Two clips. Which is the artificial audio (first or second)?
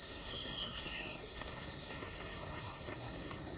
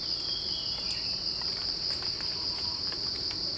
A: first